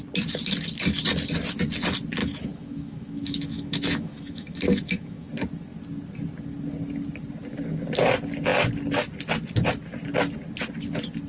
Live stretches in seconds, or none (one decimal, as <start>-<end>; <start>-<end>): 0.0-2.2; 5.3-11.3